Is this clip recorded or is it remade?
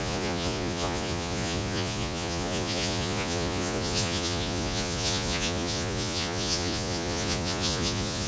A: remade